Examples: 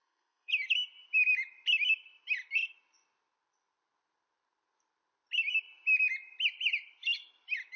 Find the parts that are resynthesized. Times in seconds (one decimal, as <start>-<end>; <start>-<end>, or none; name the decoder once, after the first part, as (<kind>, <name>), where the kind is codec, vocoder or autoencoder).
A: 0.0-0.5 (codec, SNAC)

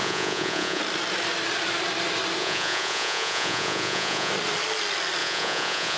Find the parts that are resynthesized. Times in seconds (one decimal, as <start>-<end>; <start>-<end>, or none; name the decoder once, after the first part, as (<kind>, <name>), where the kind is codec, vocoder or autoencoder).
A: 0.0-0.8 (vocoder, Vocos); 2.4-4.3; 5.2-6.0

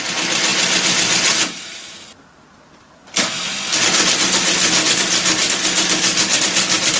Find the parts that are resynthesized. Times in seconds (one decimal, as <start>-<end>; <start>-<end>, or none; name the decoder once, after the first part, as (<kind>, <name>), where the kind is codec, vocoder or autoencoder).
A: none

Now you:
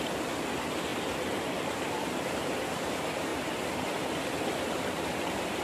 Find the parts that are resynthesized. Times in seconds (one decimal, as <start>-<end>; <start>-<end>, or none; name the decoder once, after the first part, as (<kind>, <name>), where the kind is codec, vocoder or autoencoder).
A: 0.9-2.6 (vocoder, BigVGAN v2)

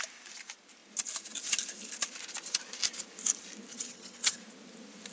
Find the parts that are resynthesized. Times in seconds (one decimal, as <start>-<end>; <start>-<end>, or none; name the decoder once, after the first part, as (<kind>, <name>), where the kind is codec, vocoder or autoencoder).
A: 3.7-4.4 (vocoder, HiFi-GAN)

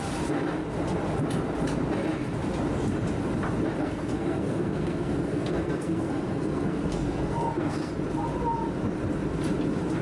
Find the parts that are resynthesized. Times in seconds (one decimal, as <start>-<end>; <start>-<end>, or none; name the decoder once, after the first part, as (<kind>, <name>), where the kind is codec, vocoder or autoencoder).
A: 3.8-7.9 (codec, SNAC)